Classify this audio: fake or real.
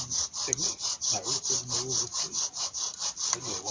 real